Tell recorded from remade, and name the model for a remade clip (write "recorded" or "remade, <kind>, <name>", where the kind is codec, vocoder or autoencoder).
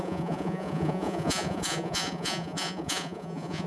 remade, vocoder, Vocos